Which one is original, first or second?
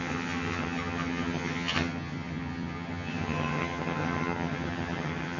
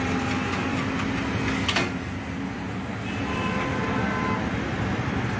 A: second